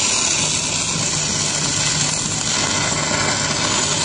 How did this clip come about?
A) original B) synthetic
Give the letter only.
A